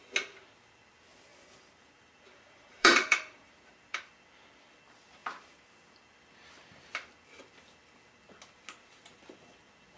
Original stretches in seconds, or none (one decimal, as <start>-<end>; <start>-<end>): 0.0-1.3; 4.2-10.0